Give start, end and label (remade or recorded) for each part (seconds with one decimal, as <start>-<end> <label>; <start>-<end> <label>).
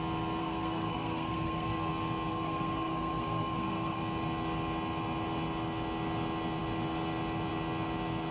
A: 0.0-0.4 recorded; 0.4-1.9 remade; 1.9-2.3 recorded; 2.3-4.0 remade; 4.0-8.3 recorded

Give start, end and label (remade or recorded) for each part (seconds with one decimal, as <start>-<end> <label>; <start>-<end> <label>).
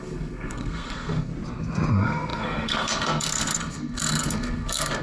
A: 0.0-1.3 remade; 1.3-1.9 recorded; 1.9-5.0 remade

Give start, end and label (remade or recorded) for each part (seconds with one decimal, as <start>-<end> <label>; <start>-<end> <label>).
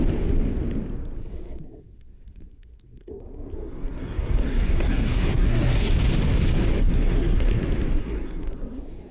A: 0.0-1.3 recorded; 1.3-5.9 remade; 5.9-6.8 recorded; 6.8-7.6 remade; 7.6-8.0 recorded; 8.0-9.1 remade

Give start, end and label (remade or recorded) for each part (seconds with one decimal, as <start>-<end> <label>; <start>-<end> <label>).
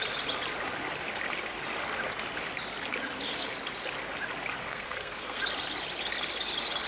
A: 0.0-4.6 recorded; 4.6-5.4 remade; 5.4-6.9 recorded